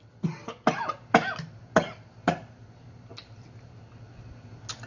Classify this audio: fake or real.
real